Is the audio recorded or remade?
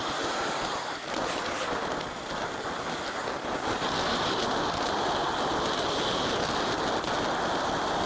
recorded